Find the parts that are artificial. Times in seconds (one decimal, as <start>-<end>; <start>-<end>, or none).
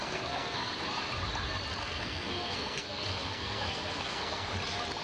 0.0-0.7; 1.8-4.5